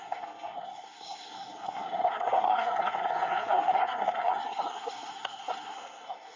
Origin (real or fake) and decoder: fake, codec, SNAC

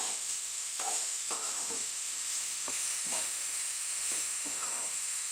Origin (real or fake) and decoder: fake, autoencoder, DAC-VAE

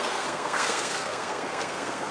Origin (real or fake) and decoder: fake, codec, SNAC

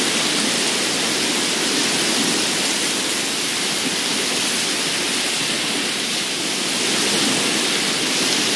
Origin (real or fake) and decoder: real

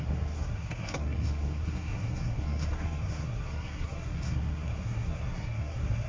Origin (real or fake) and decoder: fake, codec, SNAC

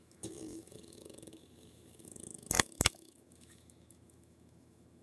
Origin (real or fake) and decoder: fake, autoencoder, DAC-VAE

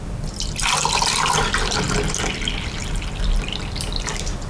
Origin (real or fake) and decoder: real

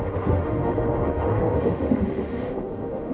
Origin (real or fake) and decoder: fake, autoencoder, DAC-VAE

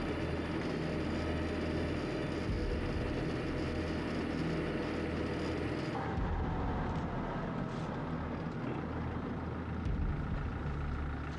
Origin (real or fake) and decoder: real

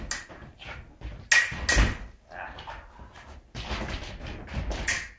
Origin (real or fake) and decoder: real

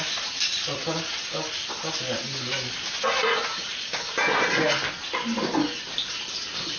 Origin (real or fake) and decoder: real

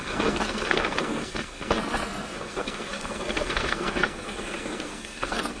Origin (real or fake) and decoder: fake, codec, SNAC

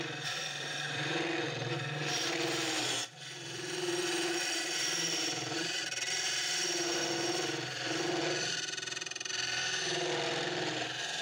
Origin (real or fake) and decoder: fake, vocoder, BigVGAN v2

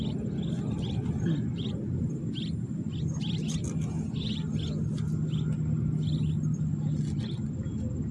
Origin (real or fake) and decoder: real